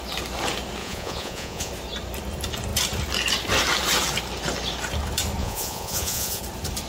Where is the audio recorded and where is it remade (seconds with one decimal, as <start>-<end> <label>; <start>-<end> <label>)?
0.0-0.8 recorded; 0.8-1.7 remade; 1.7-5.4 recorded; 5.4-6.4 remade; 6.4-6.9 recorded